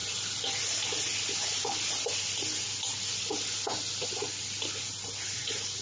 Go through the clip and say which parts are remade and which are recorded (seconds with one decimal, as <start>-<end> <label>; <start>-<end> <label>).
0.0-5.8 recorded

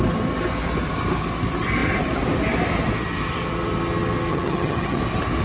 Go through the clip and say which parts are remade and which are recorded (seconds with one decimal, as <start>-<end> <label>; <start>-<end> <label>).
0.0-4.3 recorded; 4.3-5.0 remade; 5.0-5.4 recorded

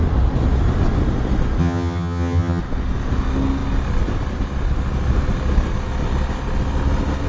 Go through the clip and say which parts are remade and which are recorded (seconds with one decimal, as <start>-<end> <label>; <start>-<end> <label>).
0.0-1.6 recorded; 1.6-2.6 remade; 2.6-7.3 recorded